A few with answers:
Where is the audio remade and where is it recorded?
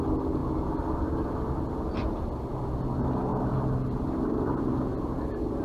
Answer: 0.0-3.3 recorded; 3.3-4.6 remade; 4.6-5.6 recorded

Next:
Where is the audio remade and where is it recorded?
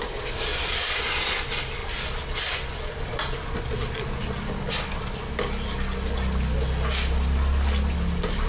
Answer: 0.0-0.5 recorded; 0.5-1.0 remade; 1.0-1.8 recorded; 1.8-5.3 remade; 5.3-8.5 recorded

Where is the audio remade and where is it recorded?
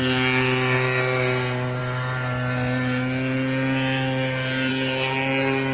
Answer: 0.0-5.7 recorded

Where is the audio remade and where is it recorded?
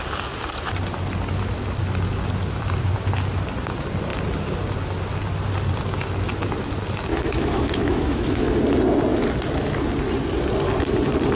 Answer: 0.0-7.1 recorded; 7.1-8.5 remade; 8.5-11.4 recorded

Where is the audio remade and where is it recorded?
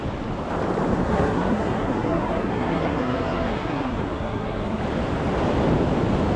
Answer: 0.0-1.0 recorded; 1.0-4.8 remade; 4.8-6.4 recorded